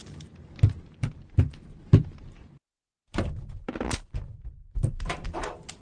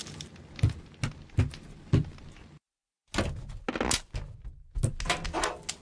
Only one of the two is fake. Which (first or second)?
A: first